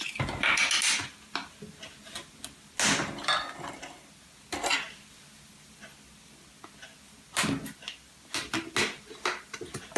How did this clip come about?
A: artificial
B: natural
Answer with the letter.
B